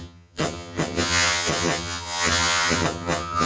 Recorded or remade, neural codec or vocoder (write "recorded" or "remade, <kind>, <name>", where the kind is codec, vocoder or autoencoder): remade, vocoder, HiFi-GAN